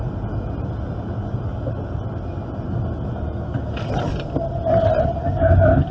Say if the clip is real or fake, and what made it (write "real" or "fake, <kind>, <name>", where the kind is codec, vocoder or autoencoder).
real